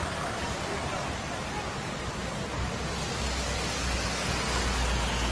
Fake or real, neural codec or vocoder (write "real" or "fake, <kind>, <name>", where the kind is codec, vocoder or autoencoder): real